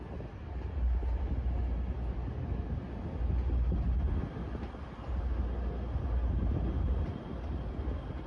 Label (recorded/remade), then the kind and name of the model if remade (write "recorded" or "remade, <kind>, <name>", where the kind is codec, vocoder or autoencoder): recorded